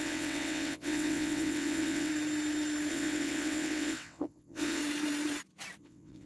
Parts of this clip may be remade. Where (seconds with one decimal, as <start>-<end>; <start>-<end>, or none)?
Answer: 0.0-2.1; 2.9-4.8; 5.8-6.3